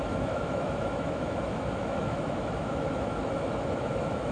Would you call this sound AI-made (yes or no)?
yes